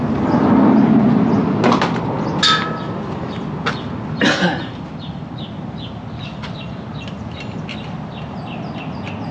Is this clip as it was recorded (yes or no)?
yes